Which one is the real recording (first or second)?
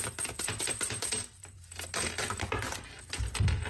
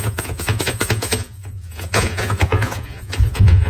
first